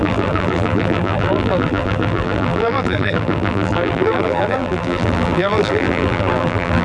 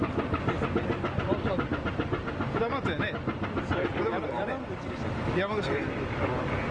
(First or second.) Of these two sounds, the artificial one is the first